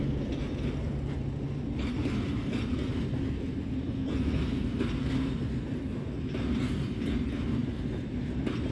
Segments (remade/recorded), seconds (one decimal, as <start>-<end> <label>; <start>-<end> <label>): 0.0-8.7 recorded